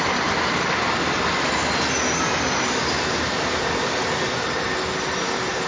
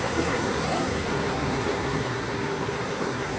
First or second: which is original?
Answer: first